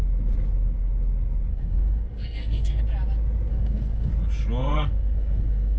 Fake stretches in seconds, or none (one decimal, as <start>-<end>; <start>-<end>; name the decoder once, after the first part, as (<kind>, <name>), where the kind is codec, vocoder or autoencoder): 1.5-2.8 (codec, SNAC); 3.5-4.1; 4.6-5.8